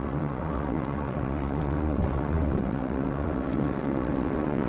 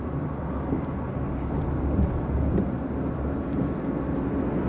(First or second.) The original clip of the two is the second